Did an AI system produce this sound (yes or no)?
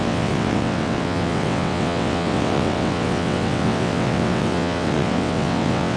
yes